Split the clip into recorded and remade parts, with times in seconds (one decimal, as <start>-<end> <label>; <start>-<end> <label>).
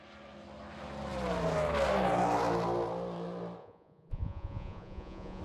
0.0-3.6 recorded; 3.6-5.4 remade